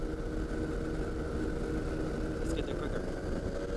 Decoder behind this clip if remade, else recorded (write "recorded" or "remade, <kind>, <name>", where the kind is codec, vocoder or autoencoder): recorded